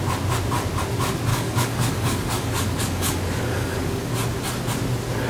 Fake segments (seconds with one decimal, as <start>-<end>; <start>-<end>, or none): 1.3-4.1